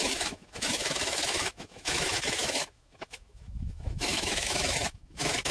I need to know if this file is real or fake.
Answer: fake